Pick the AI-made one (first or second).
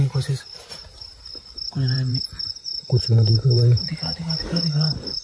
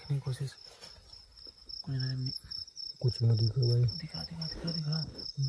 first